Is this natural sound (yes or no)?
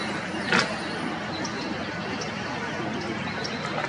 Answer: yes